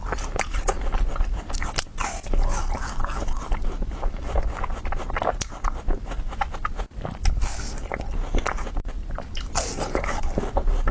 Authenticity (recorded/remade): recorded